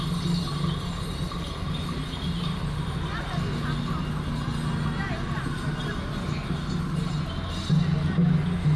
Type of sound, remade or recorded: recorded